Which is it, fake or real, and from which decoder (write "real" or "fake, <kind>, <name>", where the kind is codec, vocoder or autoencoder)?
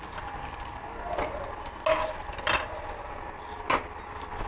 real